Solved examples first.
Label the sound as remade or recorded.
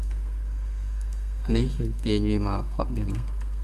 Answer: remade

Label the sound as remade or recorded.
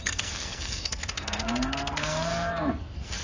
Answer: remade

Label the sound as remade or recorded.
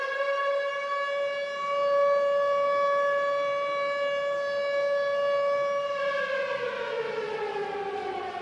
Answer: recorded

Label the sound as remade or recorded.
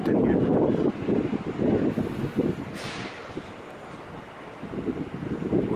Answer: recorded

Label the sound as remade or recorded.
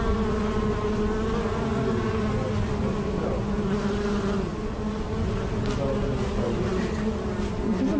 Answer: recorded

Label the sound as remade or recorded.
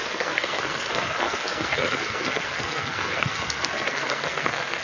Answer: remade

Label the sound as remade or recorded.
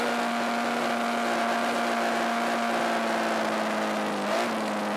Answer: recorded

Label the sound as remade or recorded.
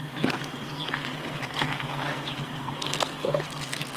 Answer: remade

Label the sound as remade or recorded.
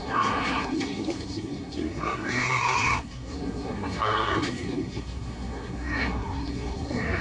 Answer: remade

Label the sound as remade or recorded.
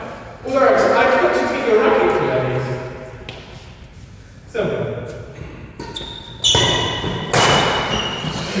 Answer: recorded